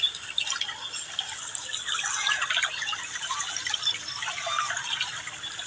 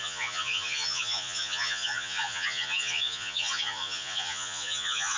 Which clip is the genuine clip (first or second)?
first